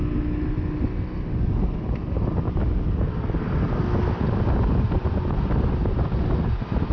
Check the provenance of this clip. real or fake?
real